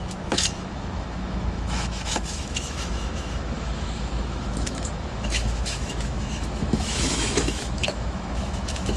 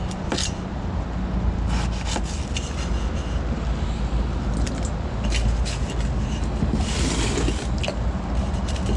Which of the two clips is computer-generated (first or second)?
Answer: first